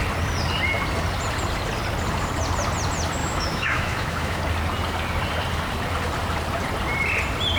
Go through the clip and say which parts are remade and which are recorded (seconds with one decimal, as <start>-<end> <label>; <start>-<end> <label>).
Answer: 0.0-3.2 recorded; 3.2-4.4 remade; 4.4-7.6 recorded